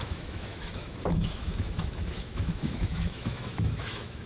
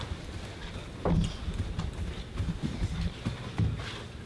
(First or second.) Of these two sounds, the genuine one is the second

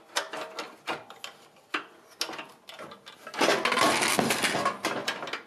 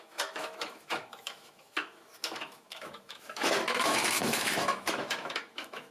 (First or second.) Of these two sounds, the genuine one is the first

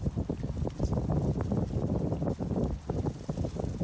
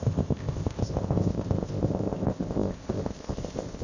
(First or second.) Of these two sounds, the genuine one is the first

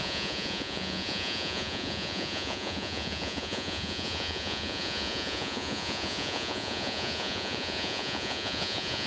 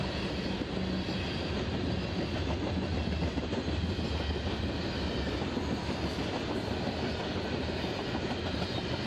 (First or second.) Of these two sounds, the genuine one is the second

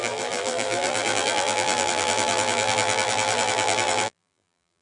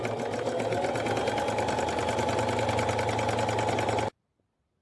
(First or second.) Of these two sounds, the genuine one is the second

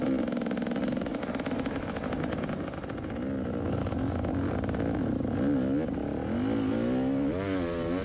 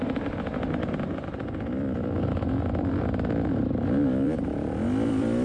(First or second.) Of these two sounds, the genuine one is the first